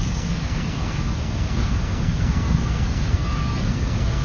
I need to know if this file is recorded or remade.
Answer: remade